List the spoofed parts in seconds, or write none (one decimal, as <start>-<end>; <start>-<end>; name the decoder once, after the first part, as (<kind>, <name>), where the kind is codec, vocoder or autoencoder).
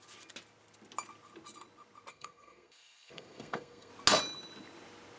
2.1-3.9 (codec, SNAC)